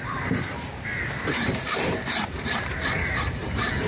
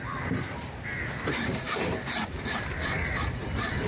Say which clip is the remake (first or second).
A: first